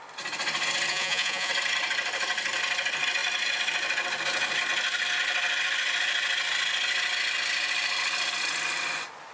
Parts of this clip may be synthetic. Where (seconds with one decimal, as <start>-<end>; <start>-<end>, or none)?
0.9-1.5